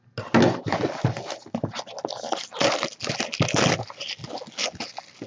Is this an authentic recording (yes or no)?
yes